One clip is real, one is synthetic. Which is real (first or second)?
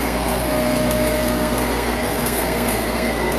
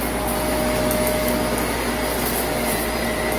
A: second